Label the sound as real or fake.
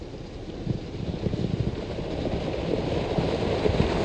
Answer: real